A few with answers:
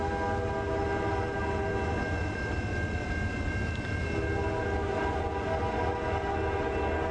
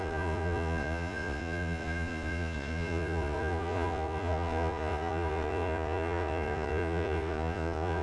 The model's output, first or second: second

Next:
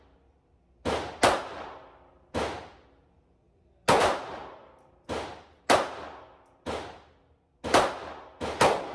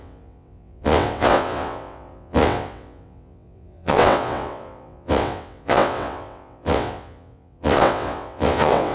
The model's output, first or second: second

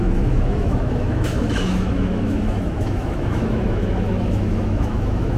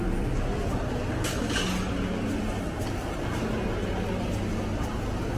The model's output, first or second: first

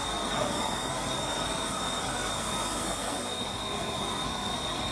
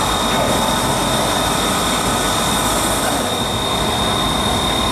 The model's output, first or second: first